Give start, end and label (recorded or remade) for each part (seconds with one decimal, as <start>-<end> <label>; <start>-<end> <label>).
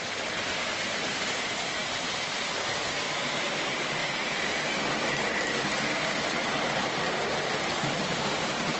0.0-8.8 recorded